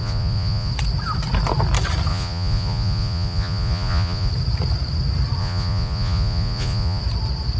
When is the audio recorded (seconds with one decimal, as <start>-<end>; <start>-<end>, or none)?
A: 0.7-2.1; 4.3-5.4; 7.0-7.6